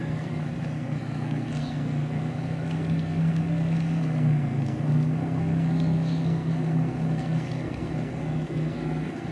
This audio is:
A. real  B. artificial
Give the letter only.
B